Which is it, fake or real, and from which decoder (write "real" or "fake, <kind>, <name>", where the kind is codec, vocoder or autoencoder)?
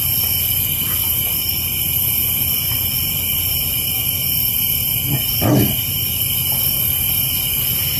real